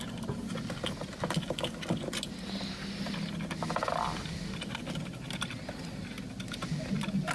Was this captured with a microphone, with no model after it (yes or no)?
yes